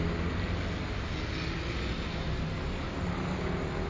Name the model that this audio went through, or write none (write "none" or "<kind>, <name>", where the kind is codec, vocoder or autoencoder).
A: none